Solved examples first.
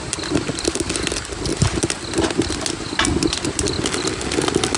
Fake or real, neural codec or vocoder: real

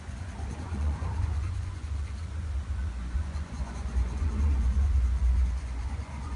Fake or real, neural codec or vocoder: fake, vocoder, Vocos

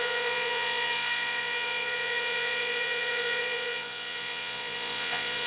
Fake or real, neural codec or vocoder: fake, vocoder, Vocos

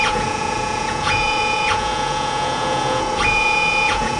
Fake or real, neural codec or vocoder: fake, vocoder, Vocos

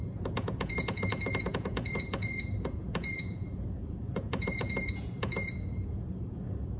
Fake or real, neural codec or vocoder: fake, vocoder, Vocos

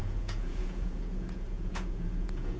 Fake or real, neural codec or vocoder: fake, vocoder, Vocos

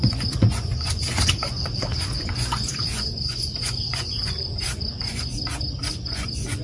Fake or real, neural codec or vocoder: fake, vocoder, Vocos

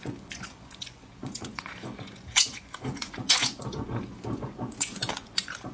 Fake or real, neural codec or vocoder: fake, vocoder, Vocos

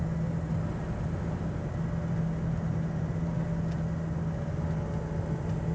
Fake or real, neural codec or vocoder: real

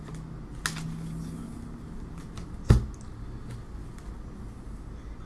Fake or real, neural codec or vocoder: real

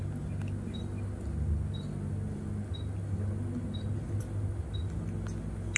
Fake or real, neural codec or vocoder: real